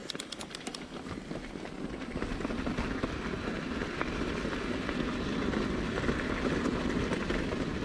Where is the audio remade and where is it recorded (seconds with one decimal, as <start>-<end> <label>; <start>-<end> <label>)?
0.0-7.8 recorded